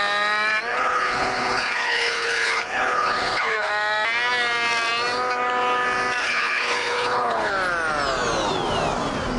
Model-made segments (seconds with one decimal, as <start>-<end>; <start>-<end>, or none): 0.7-3.7; 6.2-7.5